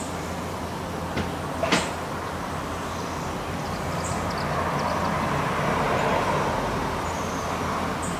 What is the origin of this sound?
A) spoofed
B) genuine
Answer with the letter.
B